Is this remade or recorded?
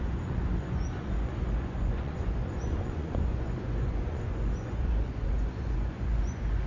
remade